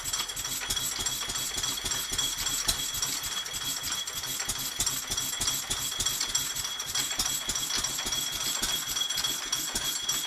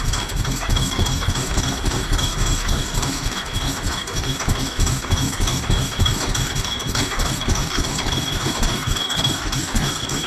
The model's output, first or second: second